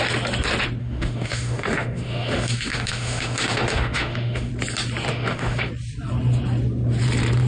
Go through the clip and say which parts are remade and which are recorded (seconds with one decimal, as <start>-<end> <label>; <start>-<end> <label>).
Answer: 0.0-0.8 recorded; 0.8-4.5 remade; 4.5-5.1 recorded; 5.1-5.7 remade; 5.7-7.5 recorded